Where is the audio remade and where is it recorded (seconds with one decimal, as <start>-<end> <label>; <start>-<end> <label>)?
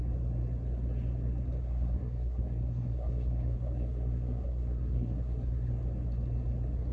0.0-1.6 recorded; 1.6-5.7 remade; 5.7-6.9 recorded